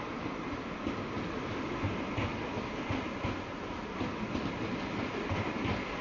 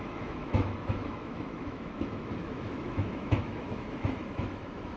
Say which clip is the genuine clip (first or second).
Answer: first